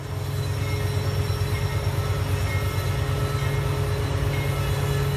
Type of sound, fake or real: real